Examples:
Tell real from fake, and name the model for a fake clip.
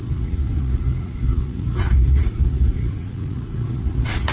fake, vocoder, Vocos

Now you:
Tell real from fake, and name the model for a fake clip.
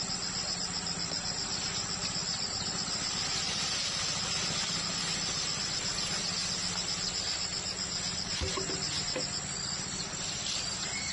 real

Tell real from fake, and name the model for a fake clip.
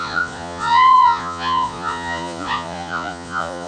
fake, vocoder, Vocos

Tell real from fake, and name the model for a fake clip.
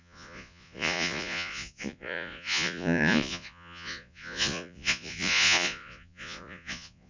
fake, vocoder, Vocos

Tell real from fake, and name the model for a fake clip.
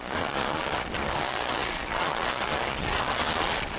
fake, vocoder, Vocos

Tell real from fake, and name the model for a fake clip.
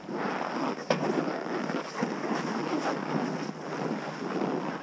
real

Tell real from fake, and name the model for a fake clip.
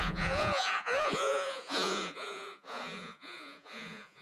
fake, vocoder, Vocos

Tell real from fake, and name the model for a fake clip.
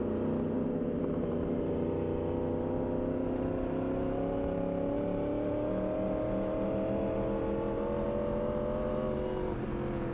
real